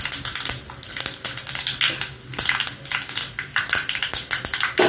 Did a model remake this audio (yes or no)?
no